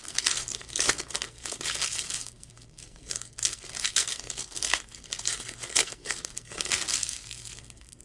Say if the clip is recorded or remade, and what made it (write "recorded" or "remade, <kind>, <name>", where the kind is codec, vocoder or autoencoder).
remade, codec, SNAC